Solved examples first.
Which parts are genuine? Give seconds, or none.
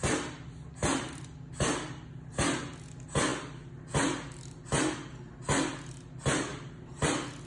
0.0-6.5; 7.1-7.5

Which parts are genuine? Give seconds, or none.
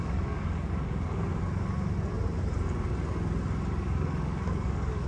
1.3-3.7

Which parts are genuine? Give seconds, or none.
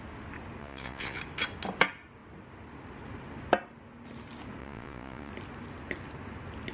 0.0-0.6; 1.2-4.6; 5.3-6.7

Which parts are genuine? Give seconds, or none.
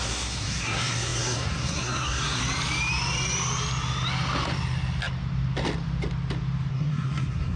2.4-6.7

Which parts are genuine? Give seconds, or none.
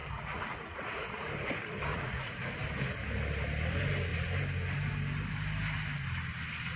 1.3-1.9; 2.4-6.8